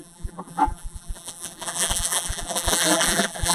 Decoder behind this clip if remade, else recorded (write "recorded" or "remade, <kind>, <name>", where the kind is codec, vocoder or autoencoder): remade, vocoder, BigVGAN v2